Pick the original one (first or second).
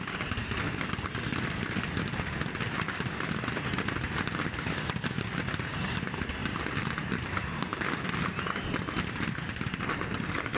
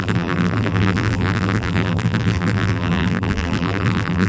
first